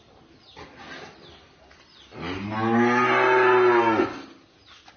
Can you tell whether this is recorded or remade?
recorded